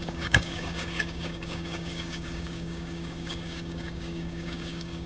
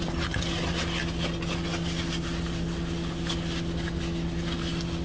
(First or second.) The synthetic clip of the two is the first